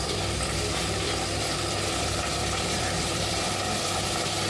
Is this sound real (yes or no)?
no